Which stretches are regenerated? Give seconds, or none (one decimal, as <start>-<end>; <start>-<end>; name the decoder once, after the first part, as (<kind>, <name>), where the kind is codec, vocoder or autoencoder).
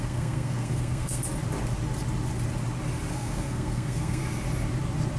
0.0-1.2 (codec, SNAC); 3.1-4.2